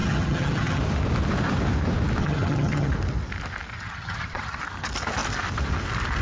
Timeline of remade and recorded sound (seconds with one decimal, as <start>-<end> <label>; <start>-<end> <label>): 0.0-0.8 remade; 0.8-2.2 recorded; 2.2-2.9 remade; 2.9-3.7 recorded; 3.7-4.6 remade; 4.6-6.2 recorded